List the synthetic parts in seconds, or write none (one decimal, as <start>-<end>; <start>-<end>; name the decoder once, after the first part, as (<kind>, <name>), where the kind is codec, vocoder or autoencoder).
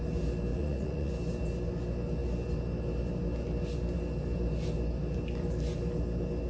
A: 0.5-1.1 (vocoder, Vocos)